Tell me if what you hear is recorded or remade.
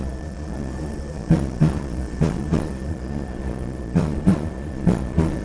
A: remade